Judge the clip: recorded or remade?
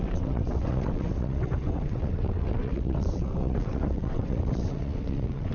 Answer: remade